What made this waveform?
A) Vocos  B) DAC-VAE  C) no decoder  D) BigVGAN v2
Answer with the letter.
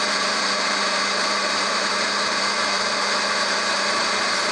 D